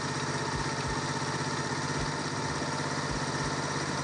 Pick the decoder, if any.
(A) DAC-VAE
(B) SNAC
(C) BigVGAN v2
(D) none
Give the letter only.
D